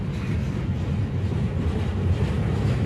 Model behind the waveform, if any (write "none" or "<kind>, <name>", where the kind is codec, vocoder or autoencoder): none